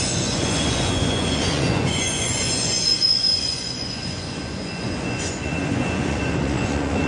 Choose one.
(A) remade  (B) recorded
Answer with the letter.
A